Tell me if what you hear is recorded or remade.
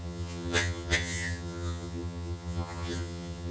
remade